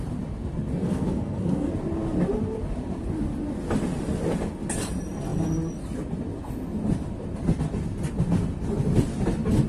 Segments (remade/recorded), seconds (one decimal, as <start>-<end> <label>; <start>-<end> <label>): 0.0-0.8 recorded; 0.8-1.7 remade; 1.7-9.7 recorded